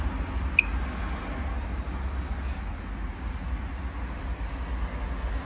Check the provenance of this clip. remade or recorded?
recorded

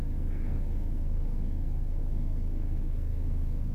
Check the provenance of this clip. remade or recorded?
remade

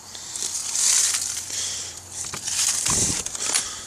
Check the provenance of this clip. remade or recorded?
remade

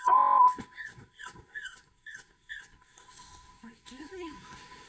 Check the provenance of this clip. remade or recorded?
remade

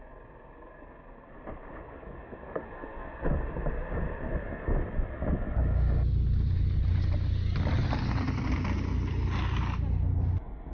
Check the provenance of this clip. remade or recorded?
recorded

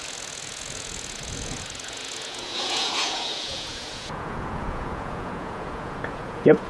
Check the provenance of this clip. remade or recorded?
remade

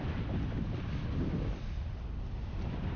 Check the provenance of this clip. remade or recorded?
remade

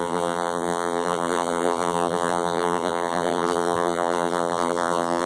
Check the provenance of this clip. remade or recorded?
remade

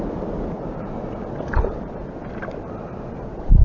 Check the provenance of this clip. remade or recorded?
recorded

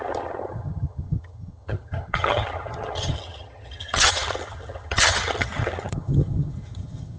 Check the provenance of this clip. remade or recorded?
remade